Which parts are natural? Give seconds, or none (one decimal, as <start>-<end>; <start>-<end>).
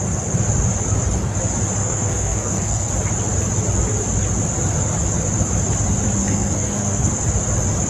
0.0-1.8; 2.9-6.2; 7.1-7.9